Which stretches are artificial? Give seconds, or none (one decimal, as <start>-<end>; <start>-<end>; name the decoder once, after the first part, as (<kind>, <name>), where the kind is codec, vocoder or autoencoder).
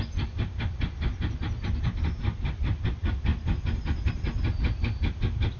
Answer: none